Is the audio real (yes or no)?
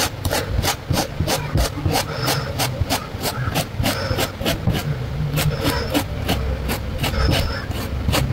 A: yes